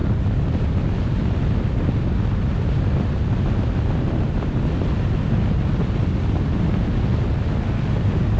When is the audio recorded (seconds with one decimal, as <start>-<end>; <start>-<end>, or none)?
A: 0.0-8.4